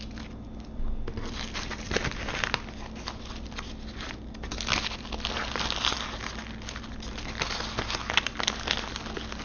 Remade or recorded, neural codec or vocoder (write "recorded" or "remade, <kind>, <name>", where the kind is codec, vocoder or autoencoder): recorded